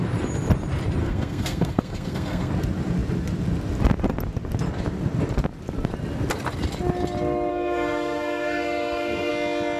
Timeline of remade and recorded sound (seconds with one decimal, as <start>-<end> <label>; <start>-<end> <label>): 0.0-1.0 recorded; 1.0-2.5 remade; 2.5-7.5 recorded; 7.5-9.3 remade; 9.3-9.8 recorded